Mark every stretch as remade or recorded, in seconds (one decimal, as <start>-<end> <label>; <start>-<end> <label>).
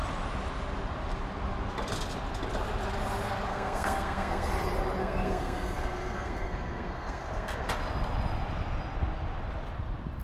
0.0-3.5 recorded; 3.5-4.5 remade; 4.5-5.0 recorded; 5.0-7.7 remade; 7.7-10.2 recorded